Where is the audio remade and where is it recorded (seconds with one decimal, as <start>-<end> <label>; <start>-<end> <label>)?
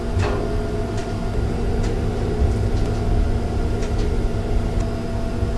0.0-5.6 recorded